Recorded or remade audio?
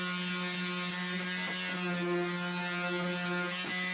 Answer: recorded